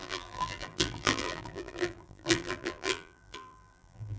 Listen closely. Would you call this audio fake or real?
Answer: fake